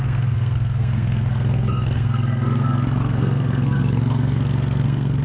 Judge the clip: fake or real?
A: fake